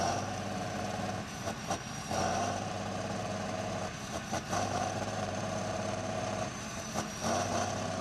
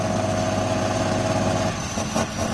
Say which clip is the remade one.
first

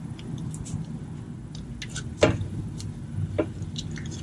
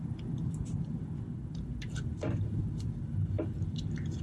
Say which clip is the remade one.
second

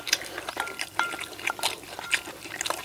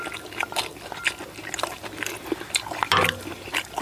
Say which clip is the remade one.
first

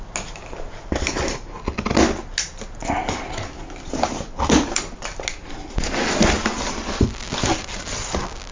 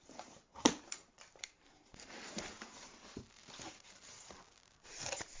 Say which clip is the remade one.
second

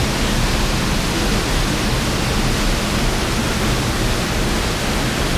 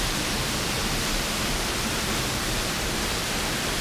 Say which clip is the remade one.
second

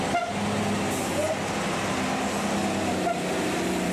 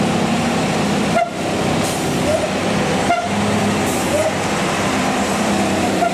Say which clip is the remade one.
second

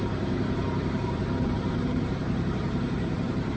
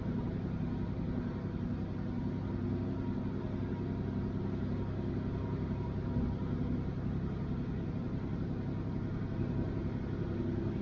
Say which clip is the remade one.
first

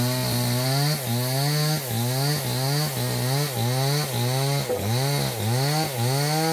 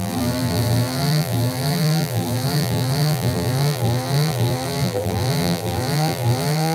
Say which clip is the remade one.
second